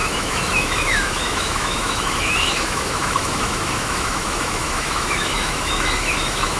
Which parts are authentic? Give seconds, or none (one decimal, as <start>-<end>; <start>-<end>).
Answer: none